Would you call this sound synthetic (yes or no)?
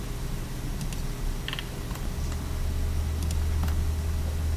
no